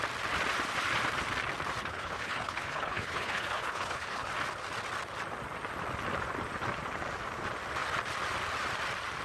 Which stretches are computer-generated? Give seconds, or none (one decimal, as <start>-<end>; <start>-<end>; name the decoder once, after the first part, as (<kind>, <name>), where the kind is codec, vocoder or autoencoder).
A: 1.9-4.3 (codec, HILCodec)

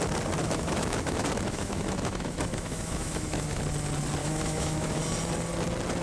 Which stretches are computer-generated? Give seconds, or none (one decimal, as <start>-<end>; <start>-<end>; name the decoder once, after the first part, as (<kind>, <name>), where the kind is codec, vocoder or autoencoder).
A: 0.4-3.6 (autoencoder, DAC-VAE); 4.2-5.0

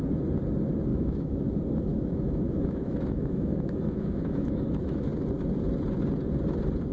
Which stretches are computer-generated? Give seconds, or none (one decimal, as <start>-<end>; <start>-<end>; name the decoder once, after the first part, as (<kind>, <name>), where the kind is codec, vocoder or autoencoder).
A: 0.9-1.5 (autoencoder, DAC-VAE); 1.9-5.1

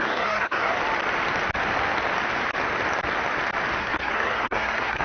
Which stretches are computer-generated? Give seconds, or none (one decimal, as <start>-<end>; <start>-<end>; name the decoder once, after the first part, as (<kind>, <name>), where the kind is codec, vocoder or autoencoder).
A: 0.0-0.8 (codec, SNAC); 3.8-5.0